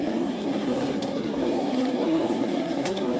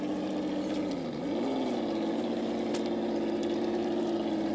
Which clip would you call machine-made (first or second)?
first